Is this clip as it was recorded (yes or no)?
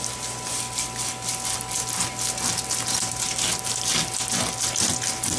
yes